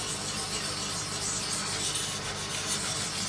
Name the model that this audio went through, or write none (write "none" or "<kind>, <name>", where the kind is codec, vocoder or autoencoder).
none